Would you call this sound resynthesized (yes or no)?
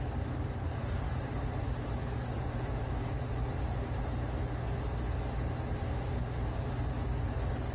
no